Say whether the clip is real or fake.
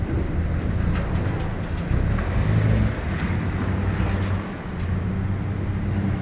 real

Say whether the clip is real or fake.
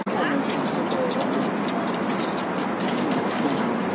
real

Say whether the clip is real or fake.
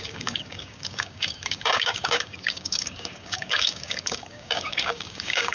fake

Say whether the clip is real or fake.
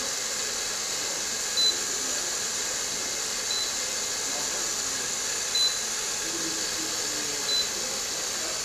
real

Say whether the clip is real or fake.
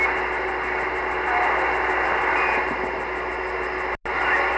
real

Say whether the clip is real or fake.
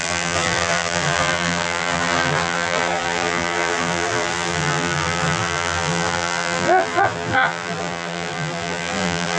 fake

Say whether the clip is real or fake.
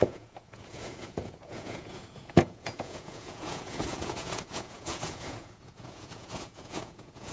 fake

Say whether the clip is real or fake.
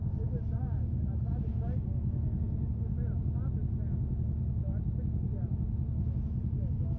real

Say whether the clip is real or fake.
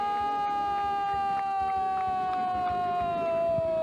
real